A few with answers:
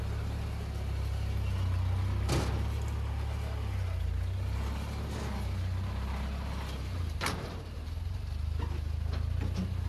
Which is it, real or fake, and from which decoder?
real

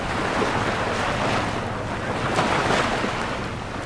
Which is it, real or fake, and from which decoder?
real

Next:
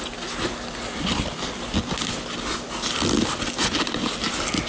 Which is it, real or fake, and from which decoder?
real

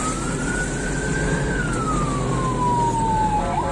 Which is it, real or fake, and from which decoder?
real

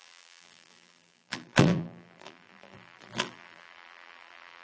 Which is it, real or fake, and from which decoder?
fake, vocoder, BigVGAN v2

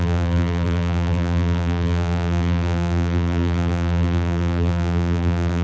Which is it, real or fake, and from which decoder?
fake, vocoder, BigVGAN v2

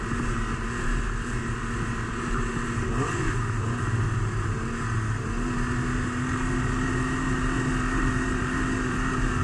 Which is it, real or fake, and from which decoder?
real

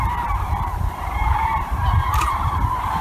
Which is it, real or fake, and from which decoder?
fake, vocoder, BigVGAN v2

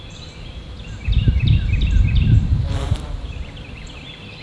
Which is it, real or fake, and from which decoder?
fake, vocoder, BigVGAN v2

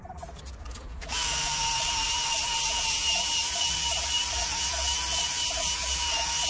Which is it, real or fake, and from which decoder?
fake, vocoder, BigVGAN v2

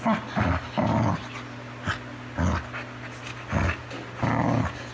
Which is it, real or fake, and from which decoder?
real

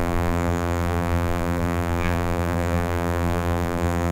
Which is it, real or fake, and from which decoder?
fake, vocoder, BigVGAN v2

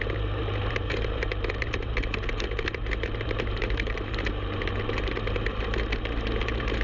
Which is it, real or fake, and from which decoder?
fake, vocoder, BigVGAN v2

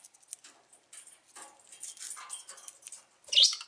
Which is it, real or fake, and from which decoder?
real